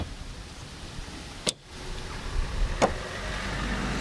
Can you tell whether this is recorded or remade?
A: recorded